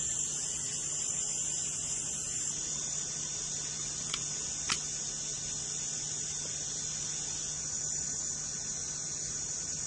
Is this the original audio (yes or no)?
yes